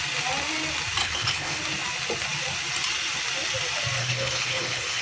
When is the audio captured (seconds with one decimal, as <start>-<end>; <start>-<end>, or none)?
0.0-1.0; 1.6-4.0